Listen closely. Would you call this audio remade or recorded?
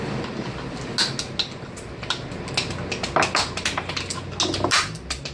recorded